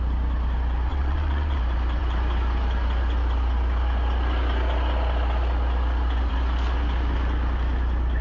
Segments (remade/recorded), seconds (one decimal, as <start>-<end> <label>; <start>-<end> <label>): 0.0-0.9 recorded; 0.9-1.6 remade; 1.6-8.2 recorded